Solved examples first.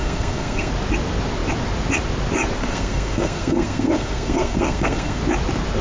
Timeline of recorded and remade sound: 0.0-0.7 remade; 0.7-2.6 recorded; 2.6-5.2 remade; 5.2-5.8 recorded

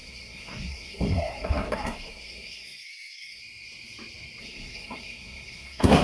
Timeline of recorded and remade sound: 0.0-3.4 remade; 3.4-4.4 recorded; 4.4-6.0 remade

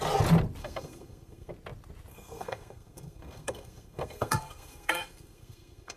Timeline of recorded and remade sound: 0.0-0.6 recorded; 0.6-1.5 remade; 1.5-2.1 recorded; 2.1-6.0 remade

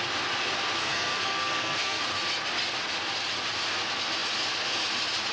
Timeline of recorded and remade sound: 0.0-0.8 recorded; 0.8-2.0 remade; 2.0-5.3 recorded

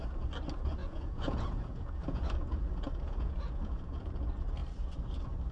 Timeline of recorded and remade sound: 0.0-0.8 recorded; 0.8-4.1 remade; 4.1-5.5 recorded